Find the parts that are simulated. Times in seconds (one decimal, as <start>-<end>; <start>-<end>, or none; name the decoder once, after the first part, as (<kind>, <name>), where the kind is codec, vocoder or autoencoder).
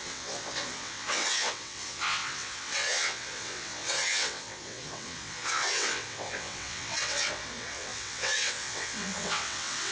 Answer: 0.0-9.9 (vocoder, WaveNeXt)